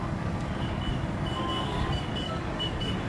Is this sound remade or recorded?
remade